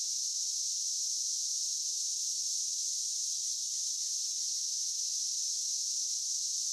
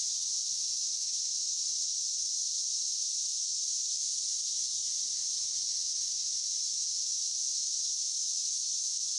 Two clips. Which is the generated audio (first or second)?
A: second